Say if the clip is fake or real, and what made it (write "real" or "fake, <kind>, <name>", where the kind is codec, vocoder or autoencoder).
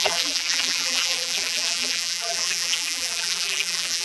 fake, vocoder, BigVGAN v2